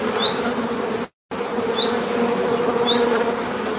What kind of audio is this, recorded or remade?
recorded